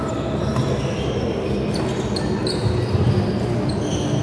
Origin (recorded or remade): recorded